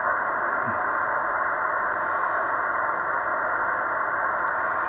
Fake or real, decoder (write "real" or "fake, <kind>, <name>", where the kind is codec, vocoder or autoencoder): real